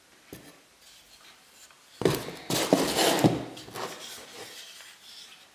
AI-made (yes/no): no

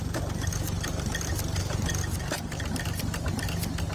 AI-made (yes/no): no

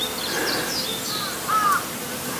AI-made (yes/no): no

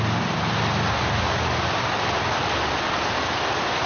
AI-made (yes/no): no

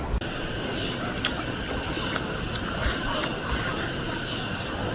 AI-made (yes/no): no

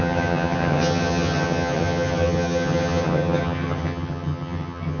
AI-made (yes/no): yes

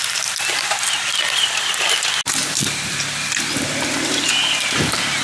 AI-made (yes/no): no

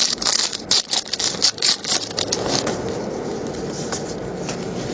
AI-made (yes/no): no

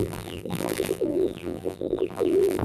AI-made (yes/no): yes